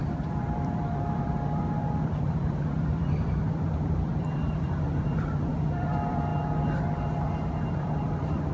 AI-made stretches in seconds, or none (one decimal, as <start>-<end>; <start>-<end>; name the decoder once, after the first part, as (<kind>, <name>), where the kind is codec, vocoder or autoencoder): 0.0-6.3 (vocoder, BigVGAN v2); 7.5-8.5